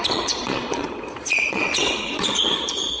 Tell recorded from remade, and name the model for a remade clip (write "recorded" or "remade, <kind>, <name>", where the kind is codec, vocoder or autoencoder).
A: remade, vocoder, Vocos